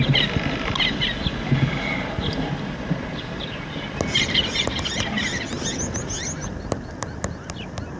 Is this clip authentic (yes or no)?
yes